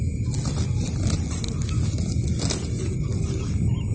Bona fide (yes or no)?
yes